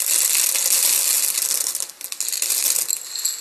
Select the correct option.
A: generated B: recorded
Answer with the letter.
B